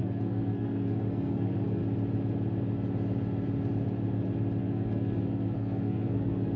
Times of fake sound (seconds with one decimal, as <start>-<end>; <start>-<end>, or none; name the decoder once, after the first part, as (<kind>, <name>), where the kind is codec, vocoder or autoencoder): 0.0-1.8 (codec, SNAC); 4.6-6.6